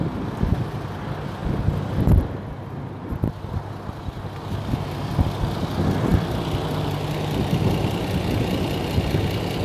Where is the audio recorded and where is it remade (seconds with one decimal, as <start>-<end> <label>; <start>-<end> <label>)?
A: 0.0-9.6 recorded